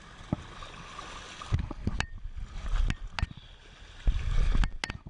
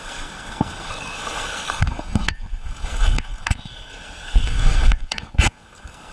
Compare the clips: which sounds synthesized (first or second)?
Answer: second